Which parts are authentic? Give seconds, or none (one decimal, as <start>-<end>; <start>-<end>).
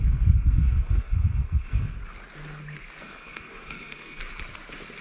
2.0-3.0; 4.2-5.0